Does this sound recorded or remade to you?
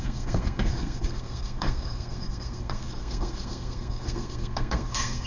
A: remade